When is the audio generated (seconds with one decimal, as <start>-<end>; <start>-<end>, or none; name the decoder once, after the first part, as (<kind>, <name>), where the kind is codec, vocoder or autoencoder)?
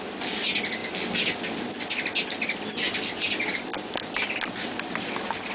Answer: none